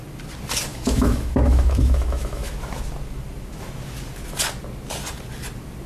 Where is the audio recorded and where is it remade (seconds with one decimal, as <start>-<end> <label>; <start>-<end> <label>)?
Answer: 0.0-0.7 recorded; 0.7-2.5 remade; 2.5-5.9 recorded